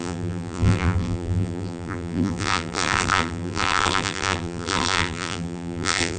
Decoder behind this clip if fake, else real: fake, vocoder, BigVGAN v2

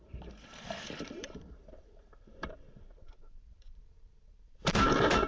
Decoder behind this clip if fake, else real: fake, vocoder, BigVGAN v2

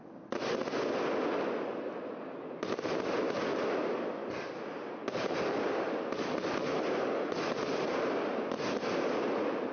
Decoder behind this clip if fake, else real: real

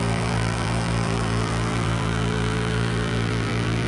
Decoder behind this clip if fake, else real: fake, vocoder, BigVGAN v2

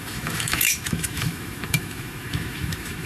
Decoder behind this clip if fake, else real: fake, autoencoder, DAC-VAE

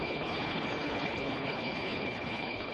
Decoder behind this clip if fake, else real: fake, codec, HILCodec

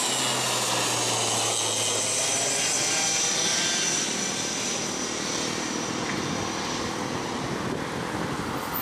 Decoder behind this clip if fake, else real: real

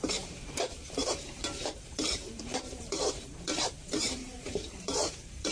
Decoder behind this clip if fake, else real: fake, vocoder, BigVGAN v2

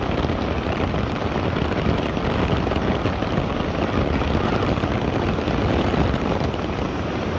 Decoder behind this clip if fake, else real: real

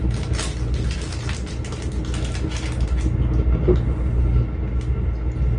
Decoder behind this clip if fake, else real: real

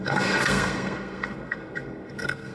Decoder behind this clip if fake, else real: fake, codec, SNAC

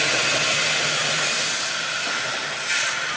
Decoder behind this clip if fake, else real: real